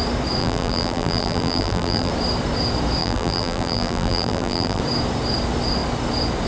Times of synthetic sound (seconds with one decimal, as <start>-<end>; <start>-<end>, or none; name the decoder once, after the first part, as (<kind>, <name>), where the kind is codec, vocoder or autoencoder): 0.4-2.1 (vocoder, BigVGAN v2); 3.0-4.8